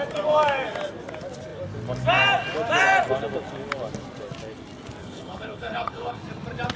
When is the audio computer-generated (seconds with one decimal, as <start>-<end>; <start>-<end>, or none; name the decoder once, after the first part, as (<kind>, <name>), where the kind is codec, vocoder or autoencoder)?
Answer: 5.0-6.2 (codec, HILCodec)